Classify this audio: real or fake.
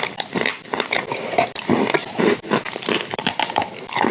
fake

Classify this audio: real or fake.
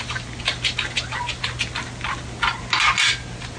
real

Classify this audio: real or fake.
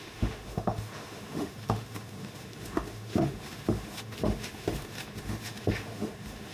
fake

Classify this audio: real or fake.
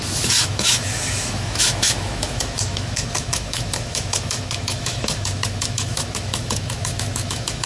fake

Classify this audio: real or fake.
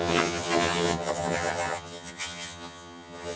fake